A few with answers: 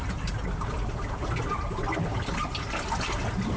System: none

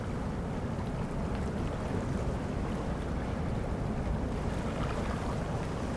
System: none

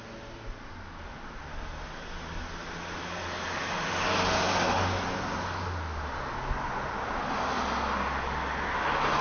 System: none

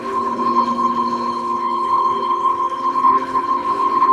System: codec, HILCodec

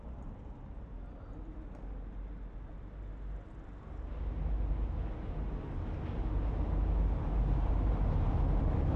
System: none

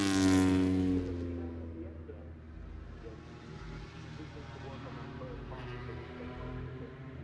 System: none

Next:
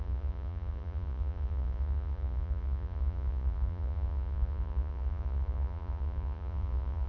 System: vocoder, Vocos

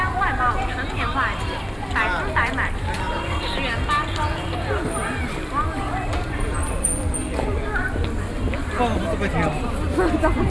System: none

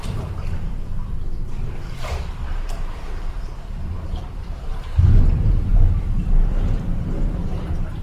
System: vocoder, BigVGAN v2